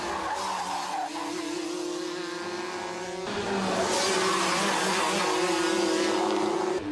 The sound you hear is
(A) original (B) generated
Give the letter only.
A